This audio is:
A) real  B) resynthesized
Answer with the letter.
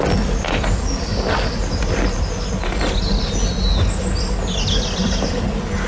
A